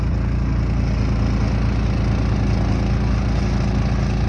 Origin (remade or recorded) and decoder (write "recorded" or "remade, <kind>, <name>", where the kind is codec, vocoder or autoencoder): recorded